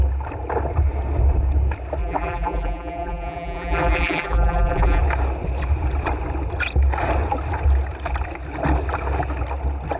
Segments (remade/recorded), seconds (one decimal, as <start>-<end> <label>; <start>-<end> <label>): 0.0-2.0 recorded; 2.0-5.0 remade; 5.0-10.0 recorded

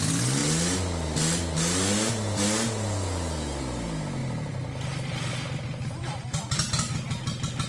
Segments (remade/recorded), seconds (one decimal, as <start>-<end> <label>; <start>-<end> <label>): 0.0-7.7 recorded

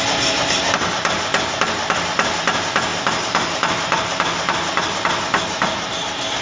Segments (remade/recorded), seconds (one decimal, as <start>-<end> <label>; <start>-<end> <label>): 0.0-6.4 recorded

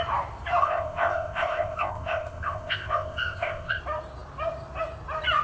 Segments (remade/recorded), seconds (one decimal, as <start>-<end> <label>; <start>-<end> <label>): 0.0-0.6 recorded; 0.6-3.8 remade; 3.8-5.4 recorded

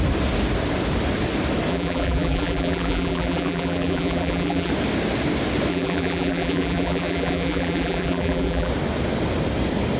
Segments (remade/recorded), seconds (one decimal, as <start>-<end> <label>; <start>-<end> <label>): 0.0-1.7 recorded; 1.7-4.7 remade; 4.7-5.7 recorded; 5.7-8.7 remade; 8.7-10.0 recorded